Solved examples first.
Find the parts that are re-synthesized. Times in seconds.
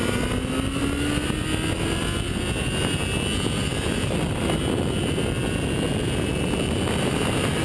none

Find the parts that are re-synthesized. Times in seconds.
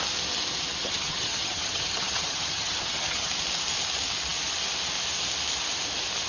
0.8-3.3 (vocoder, HiFi-GAN)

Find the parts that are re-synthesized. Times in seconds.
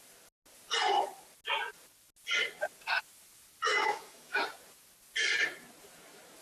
3.7-4.4 (autoencoder, DAC-VAE)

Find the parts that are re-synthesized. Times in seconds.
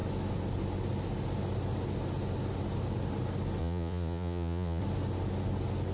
3.6-4.8 (vocoder, Vocos)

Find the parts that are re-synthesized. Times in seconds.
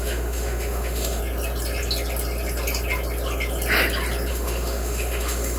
0.0-1.2 (autoencoder, DAC-VAE); 4.3-5.6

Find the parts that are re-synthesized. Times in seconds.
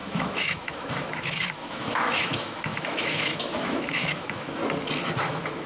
0.0-4.6 (autoencoder, DAC-VAE); 5.2-5.7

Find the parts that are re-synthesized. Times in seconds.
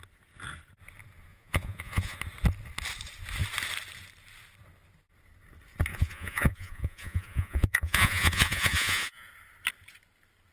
1.3-2.2 (vocoder, Vocos); 5.9-9.3